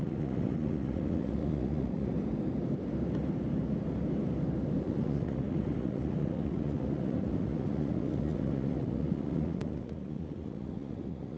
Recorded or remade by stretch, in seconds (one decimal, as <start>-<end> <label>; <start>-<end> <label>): 0.0-2.1 remade; 2.1-4.8 recorded; 4.8-11.4 remade